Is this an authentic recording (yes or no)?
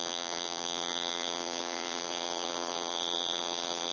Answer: no